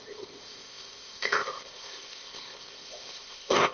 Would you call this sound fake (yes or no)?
yes